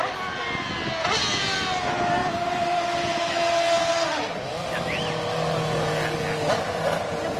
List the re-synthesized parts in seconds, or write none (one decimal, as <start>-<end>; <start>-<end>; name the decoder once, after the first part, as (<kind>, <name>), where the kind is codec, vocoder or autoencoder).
none